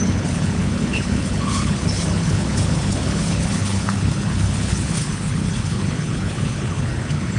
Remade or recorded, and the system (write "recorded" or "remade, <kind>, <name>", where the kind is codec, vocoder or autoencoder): remade, codec, HILCodec